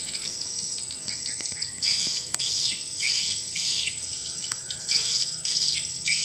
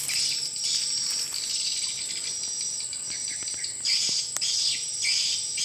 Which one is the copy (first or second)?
first